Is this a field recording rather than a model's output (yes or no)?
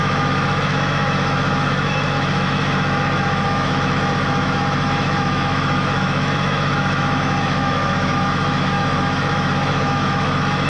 no